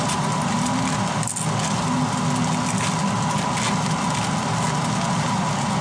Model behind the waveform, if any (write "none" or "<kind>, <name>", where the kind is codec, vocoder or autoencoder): none